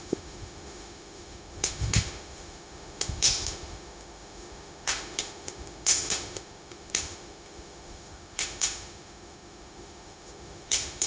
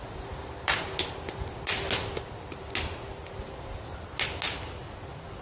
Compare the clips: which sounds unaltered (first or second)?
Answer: second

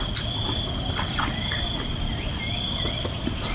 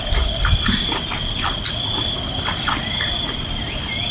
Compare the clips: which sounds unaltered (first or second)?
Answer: first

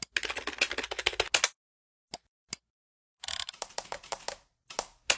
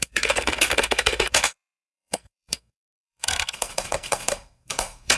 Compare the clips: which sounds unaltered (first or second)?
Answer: first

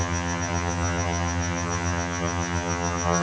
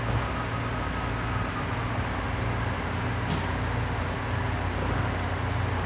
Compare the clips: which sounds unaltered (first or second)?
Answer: second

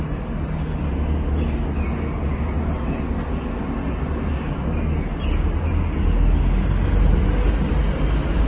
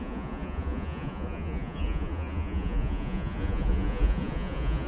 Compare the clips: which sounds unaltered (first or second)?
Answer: first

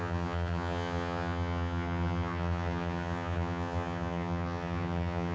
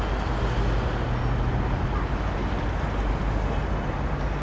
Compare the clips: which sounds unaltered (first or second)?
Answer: second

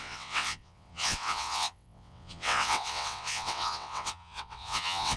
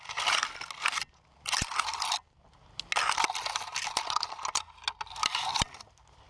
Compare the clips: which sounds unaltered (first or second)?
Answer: second